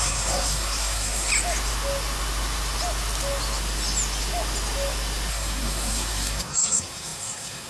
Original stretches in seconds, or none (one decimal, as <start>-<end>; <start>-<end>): 1.3-5.3